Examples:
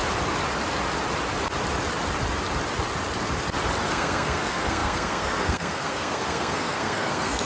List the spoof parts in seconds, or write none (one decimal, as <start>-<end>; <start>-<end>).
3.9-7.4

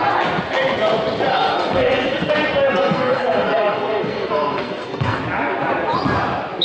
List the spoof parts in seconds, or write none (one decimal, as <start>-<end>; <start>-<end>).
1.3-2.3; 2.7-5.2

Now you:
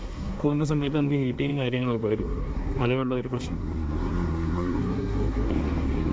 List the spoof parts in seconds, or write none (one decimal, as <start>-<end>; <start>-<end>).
0.0-6.1